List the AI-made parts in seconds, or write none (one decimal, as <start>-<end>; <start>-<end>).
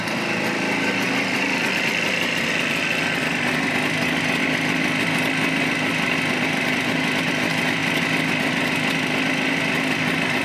none